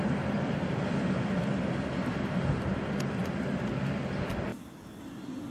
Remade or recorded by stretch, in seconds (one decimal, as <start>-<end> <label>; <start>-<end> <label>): 0.0-1.4 recorded; 1.4-3.2 remade; 3.2-5.5 recorded